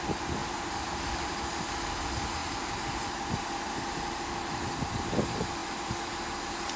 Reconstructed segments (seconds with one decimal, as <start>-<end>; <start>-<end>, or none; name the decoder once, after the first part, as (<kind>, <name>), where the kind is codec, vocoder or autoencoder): 0.4-1.8 (vocoder, BigVGAN v2); 5.6-6.2